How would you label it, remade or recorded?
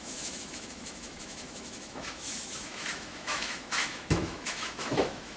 remade